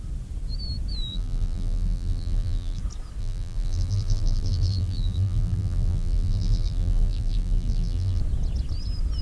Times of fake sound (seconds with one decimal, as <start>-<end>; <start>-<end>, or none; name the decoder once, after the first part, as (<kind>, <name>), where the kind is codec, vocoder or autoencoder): 1.1-2.8 (vocoder, BigVGAN v2); 3.2-8.2